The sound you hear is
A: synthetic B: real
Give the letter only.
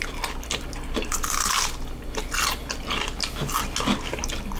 B